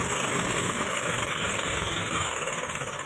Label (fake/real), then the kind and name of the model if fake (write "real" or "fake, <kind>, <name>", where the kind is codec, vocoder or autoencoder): fake, codec, DAC